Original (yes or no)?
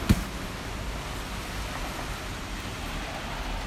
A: yes